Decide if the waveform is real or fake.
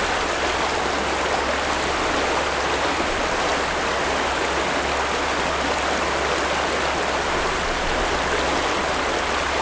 real